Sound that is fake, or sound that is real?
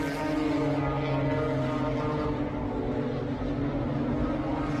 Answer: real